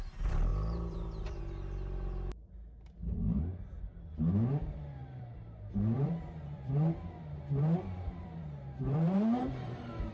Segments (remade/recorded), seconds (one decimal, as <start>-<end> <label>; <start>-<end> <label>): 0.0-0.5 recorded; 0.5-1.4 remade; 1.4-3.5 recorded; 3.5-4.1 remade; 4.1-5.0 recorded; 5.0-10.1 remade

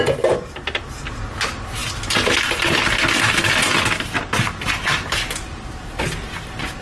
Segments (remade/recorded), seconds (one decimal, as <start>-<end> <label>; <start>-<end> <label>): 0.0-6.8 recorded